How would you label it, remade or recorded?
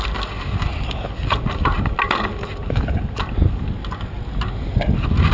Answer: recorded